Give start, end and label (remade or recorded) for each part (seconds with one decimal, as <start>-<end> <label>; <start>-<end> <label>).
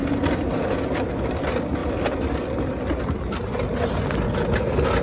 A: 0.0-5.0 recorded